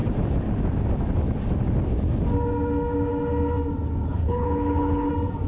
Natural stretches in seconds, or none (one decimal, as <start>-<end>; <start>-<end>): 0.0-4.1; 5.1-5.5